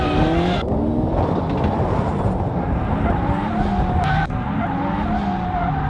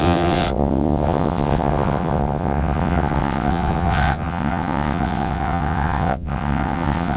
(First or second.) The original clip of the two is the first